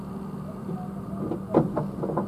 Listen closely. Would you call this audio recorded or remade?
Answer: recorded